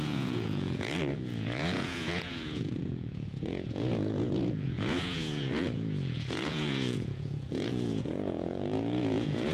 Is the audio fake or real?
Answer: fake